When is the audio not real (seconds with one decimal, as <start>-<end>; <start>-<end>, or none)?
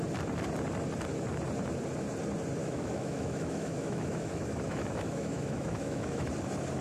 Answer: 2.6-6.3